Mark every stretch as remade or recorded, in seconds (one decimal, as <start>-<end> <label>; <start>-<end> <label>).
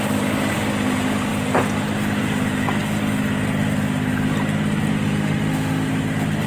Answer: 0.0-4.9 recorded; 4.9-5.9 remade; 5.9-6.5 recorded